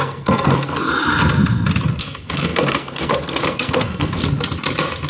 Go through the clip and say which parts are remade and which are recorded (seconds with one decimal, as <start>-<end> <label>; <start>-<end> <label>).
0.0-0.9 remade; 0.9-2.0 recorded; 2.0-4.2 remade; 4.2-5.1 recorded